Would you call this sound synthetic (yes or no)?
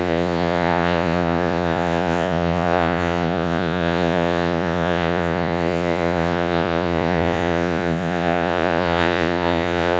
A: yes